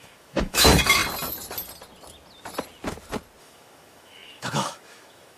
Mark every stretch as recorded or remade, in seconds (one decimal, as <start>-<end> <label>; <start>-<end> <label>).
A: 0.0-1.0 remade; 1.0-3.4 recorded; 3.4-5.4 remade

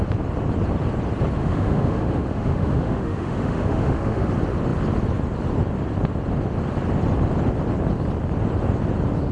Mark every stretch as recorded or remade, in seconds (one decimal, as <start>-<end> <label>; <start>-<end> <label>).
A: 0.0-1.4 recorded; 1.4-4.3 remade; 4.3-9.3 recorded

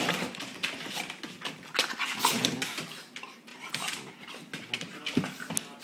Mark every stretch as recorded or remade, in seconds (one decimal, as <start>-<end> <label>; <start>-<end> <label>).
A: 0.0-5.8 recorded

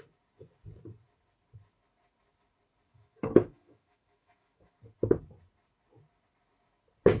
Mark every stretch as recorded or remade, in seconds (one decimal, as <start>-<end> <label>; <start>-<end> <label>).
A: 0.0-2.9 recorded; 2.9-4.8 remade; 4.8-7.2 recorded

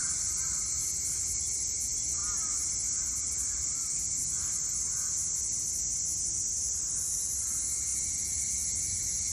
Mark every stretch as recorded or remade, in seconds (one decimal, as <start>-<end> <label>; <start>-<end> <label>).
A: 0.0-9.3 recorded

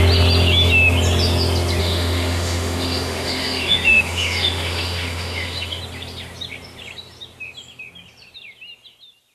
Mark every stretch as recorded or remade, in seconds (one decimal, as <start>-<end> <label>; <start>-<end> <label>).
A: 0.0-1.8 recorded; 1.8-5.8 remade; 5.8-9.3 recorded

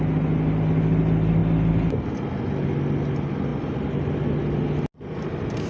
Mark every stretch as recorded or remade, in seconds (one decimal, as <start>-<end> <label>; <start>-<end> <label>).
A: 0.0-5.7 recorded